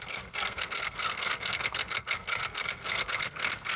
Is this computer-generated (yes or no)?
yes